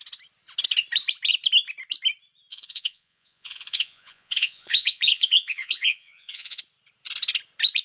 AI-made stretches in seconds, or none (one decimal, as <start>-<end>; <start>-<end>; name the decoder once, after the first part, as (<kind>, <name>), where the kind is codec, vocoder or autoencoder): 2.5-6.6 (vocoder, Vocos)